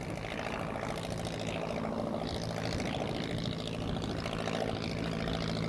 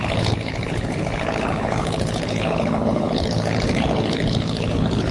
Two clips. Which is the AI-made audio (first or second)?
second